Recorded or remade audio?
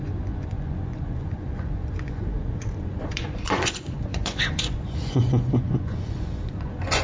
remade